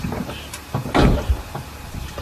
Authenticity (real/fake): real